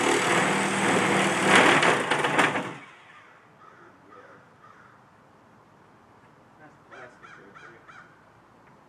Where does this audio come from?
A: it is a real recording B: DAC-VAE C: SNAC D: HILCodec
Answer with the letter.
A